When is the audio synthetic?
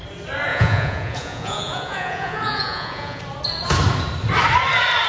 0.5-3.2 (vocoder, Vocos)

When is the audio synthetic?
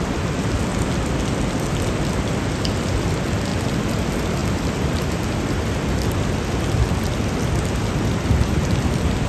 none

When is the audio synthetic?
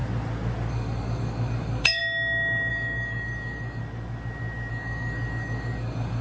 0.7-2.0 (codec, DAC); 2.7-3.8; 4.7-6.2